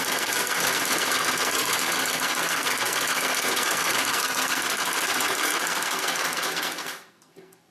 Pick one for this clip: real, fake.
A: fake